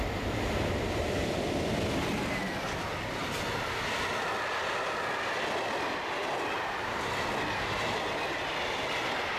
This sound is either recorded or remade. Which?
recorded